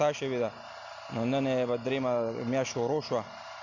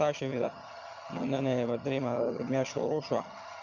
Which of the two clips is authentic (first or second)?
first